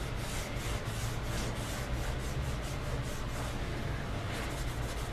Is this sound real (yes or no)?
yes